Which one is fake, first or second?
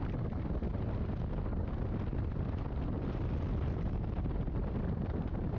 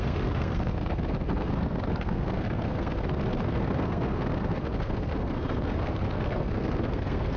second